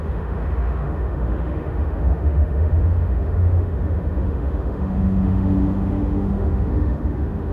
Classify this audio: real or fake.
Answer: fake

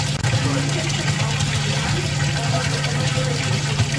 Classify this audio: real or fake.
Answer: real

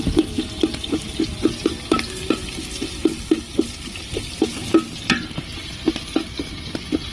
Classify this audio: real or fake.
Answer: real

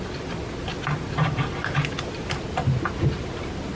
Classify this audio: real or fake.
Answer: real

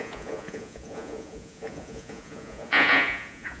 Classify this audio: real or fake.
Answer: fake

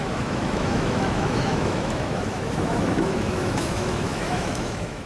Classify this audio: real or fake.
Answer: fake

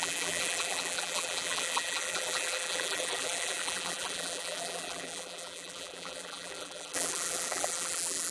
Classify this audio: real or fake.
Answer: fake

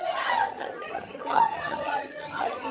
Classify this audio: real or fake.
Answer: fake